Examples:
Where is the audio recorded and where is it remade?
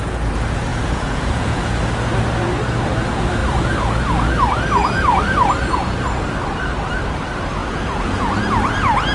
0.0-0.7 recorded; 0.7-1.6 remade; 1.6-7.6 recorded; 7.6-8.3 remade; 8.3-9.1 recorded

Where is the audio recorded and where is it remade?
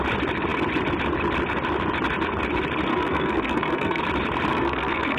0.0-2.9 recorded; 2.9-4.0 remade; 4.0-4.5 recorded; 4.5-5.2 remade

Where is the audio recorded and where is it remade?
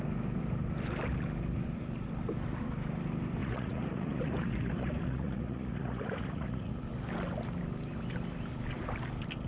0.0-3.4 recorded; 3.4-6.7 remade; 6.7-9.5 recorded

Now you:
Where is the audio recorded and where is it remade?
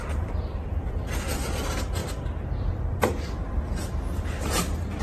0.0-5.0 remade